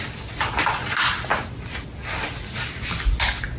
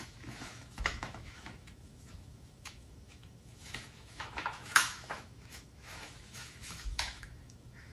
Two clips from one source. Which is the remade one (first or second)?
second